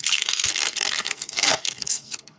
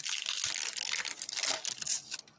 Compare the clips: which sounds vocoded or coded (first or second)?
first